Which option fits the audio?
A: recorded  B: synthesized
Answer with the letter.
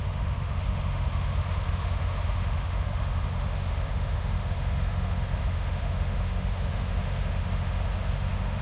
B